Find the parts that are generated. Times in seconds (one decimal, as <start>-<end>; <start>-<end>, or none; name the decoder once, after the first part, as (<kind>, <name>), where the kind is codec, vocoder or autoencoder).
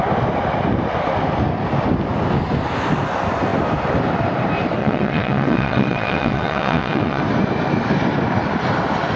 4.8-7.2 (vocoder, WaveNeXt)